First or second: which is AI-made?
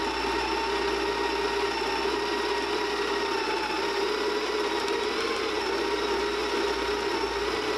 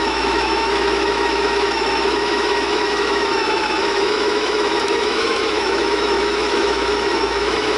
second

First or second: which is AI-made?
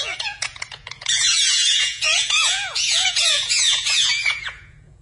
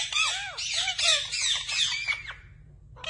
first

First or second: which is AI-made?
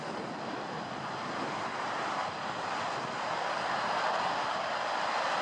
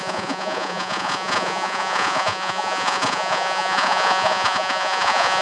second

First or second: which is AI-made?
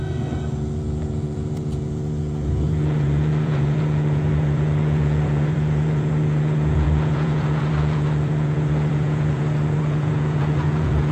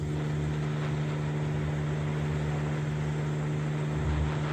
first